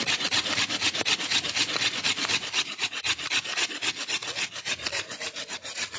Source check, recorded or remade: recorded